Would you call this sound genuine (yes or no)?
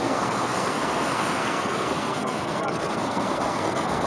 no